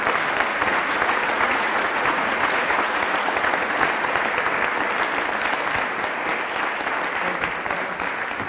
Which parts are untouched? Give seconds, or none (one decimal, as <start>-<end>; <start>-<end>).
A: 0.0-0.5; 4.2-8.5